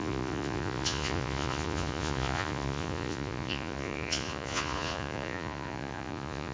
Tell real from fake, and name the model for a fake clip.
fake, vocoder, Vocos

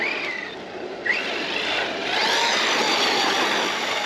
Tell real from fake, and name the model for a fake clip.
real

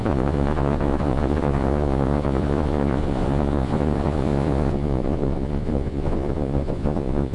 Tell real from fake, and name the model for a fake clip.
fake, vocoder, Vocos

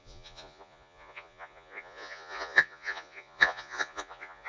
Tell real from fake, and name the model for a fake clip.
fake, vocoder, Vocos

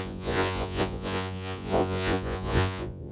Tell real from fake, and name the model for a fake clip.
fake, vocoder, Vocos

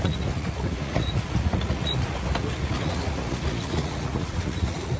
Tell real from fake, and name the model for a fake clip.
fake, vocoder, Vocos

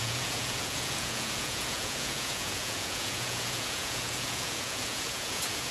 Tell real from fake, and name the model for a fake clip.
fake, vocoder, Vocos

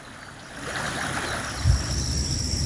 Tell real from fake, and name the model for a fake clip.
real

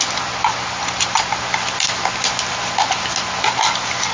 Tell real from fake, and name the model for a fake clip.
real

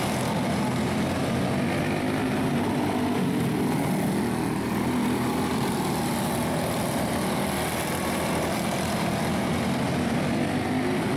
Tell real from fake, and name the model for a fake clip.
real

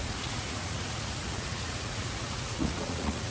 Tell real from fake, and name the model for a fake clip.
fake, vocoder, Vocos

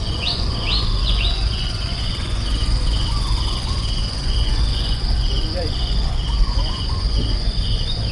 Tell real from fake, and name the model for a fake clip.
fake, vocoder, Vocos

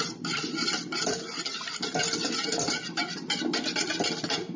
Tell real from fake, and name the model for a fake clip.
real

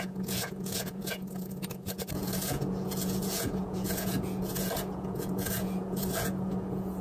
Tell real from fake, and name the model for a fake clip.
fake, vocoder, Vocos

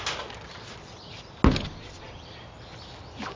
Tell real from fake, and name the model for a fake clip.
real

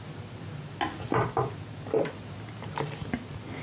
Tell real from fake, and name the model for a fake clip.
real